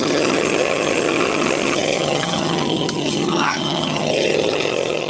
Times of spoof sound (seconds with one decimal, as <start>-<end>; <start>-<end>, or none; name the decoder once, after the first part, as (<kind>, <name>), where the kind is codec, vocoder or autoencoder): 0.0-5.1 (vocoder, HiFi-GAN)